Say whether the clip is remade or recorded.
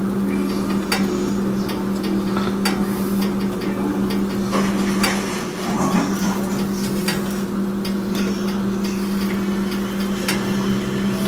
recorded